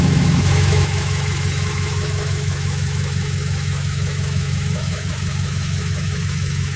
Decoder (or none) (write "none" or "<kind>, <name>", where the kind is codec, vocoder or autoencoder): autoencoder, DAC-VAE